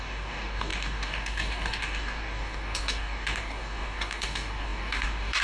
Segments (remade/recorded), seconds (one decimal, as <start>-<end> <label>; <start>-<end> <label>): 0.0-5.4 remade